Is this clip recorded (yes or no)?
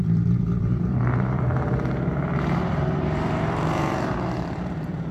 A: no